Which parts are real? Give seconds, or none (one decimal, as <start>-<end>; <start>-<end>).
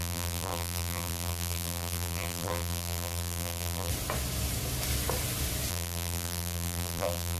3.9-5.7